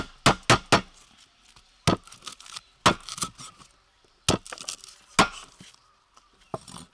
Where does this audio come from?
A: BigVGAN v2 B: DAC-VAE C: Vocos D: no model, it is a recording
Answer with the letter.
D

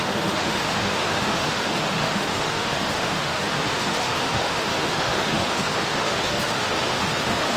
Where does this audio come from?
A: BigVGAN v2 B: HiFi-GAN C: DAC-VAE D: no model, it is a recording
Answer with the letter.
C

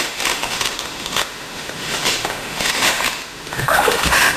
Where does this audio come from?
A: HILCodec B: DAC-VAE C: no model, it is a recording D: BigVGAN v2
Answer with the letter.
B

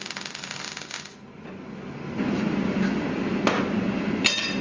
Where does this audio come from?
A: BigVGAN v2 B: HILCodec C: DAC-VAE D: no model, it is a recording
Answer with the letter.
D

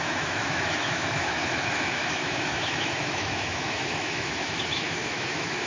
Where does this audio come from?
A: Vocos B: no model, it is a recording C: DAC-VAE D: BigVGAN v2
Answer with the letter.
C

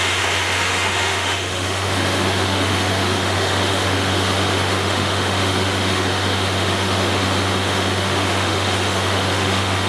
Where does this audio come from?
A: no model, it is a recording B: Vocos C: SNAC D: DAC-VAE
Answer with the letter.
D